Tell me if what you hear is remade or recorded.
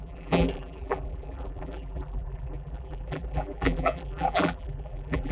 remade